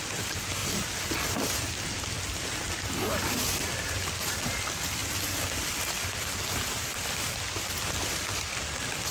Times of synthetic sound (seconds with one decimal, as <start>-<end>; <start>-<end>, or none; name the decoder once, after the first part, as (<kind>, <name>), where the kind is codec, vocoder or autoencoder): none